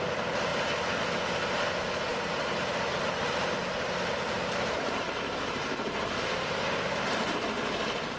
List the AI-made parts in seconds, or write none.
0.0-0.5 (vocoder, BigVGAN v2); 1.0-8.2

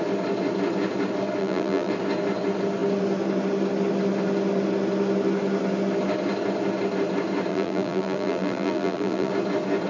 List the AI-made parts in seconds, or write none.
1.4-1.9 (vocoder, BigVGAN v2); 7.5-9.3

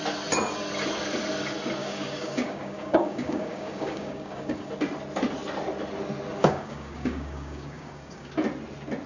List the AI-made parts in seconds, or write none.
1.8-4.7 (codec, DAC); 6.4-8.3

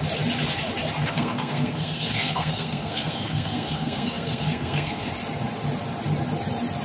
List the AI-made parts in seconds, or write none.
1.0-5.1 (codec, SNAC)

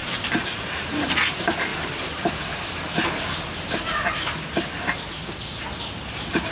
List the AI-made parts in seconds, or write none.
0.0-0.8 (vocoder, BigVGAN v2); 1.7-2.3

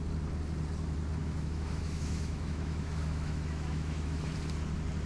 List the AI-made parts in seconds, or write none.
1.2-4.3 (autoencoder, DAC-VAE)

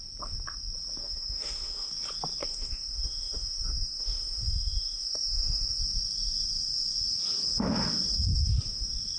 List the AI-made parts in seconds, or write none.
1.0-1.9 (autoencoder, DAC-VAE); 2.4-5.8